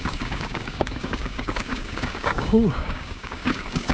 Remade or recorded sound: remade